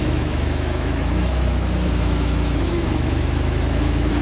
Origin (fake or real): fake